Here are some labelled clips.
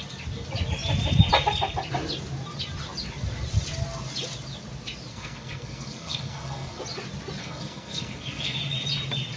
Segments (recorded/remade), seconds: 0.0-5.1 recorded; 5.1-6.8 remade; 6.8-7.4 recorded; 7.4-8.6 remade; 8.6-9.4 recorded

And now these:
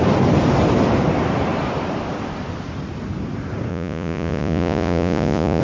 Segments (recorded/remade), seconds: 0.0-3.7 recorded; 3.7-5.6 remade

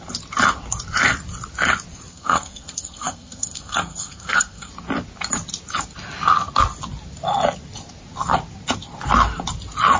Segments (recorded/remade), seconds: 0.0-2.1 recorded; 2.1-4.7 remade; 4.7-10.0 recorded

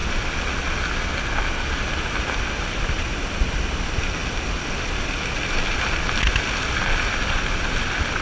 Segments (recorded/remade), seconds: 0.0-8.2 recorded

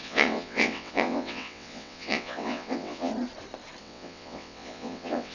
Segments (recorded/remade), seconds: 0.0-3.1 remade; 3.1-3.8 recorded; 3.8-5.3 remade